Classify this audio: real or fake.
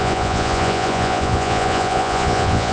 fake